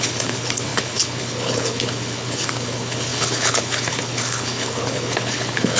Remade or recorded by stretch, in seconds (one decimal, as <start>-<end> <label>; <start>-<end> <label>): 0.0-5.8 remade